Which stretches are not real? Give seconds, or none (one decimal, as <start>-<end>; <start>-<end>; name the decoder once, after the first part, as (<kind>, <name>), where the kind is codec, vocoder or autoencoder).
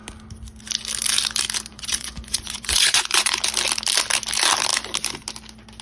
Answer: 1.7-3.4 (vocoder, Vocos)